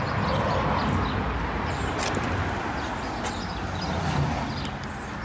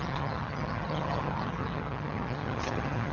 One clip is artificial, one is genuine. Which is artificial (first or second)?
second